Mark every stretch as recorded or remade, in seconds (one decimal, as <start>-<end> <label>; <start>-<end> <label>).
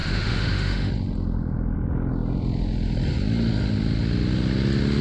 0.0-0.9 remade; 0.9-5.0 recorded